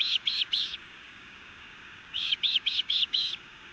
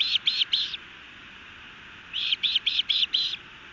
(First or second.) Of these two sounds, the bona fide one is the second